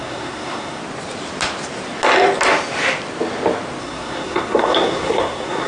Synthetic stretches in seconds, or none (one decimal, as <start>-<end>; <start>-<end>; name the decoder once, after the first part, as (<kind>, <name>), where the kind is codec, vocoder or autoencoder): 0.0-0.8 (codec, SNAC); 3.8-5.7

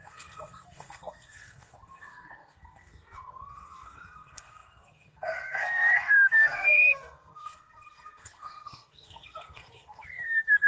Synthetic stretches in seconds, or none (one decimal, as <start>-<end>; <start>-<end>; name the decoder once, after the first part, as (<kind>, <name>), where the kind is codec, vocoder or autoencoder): 0.0-10.7 (codec, SNAC)

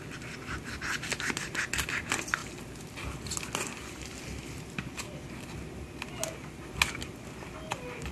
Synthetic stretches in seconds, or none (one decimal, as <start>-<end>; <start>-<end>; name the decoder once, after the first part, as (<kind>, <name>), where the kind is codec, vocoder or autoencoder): none

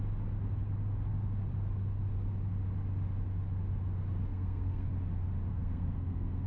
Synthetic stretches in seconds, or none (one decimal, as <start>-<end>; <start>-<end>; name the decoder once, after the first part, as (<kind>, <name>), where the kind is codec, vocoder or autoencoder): 4.3-4.9 (codec, SNAC); 5.5-6.5

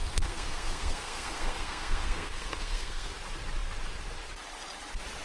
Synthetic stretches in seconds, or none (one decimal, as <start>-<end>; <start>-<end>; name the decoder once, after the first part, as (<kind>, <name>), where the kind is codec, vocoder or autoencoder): 0.0-3.1 (codec, SNAC)